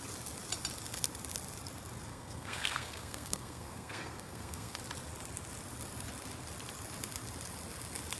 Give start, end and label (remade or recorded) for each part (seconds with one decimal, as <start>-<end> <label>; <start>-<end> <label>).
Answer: 0.0-2.1 recorded; 2.1-4.8 remade; 4.8-8.2 recorded